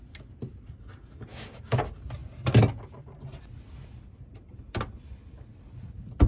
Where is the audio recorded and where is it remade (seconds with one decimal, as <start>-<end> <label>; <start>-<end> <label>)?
0.0-1.3 recorded; 1.3-1.8 remade; 1.8-6.3 recorded